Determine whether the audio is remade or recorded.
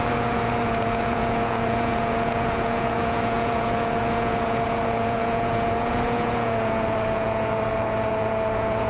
remade